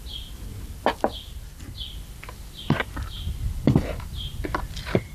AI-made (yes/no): yes